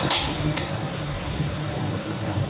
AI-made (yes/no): yes